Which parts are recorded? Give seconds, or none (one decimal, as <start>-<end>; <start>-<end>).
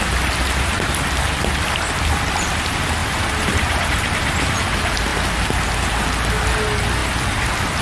0.0-3.0; 4.5-7.8